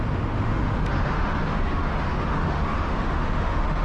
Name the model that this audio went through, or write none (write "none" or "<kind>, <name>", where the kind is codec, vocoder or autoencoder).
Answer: autoencoder, DAC-VAE